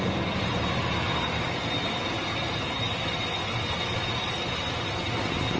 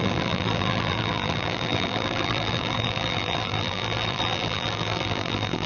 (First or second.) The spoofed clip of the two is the second